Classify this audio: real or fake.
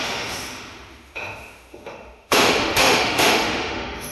fake